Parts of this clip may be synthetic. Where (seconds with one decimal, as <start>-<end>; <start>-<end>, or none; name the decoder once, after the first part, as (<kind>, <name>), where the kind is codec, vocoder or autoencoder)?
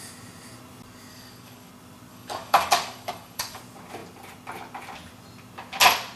1.1-1.7 (codec, DAC); 2.1-3.6